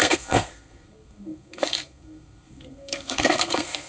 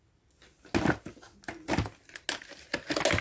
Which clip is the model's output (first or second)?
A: first